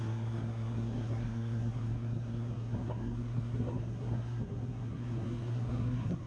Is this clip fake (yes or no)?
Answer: yes